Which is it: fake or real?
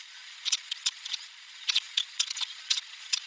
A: fake